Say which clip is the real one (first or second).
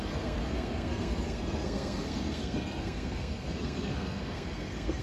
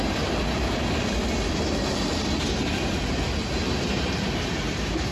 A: second